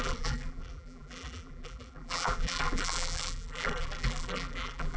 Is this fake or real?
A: fake